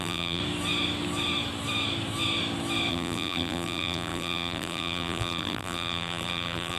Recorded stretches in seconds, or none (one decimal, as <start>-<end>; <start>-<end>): 0.4-2.9